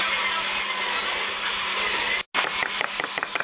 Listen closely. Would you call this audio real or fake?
real